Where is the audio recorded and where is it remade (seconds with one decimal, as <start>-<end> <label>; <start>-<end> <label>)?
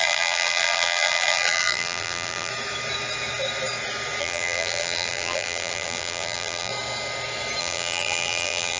0.0-2.5 remade; 2.5-4.2 recorded; 4.2-6.7 remade; 6.7-7.6 recorded; 7.6-8.8 remade